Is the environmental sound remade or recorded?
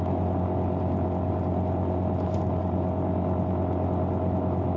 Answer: recorded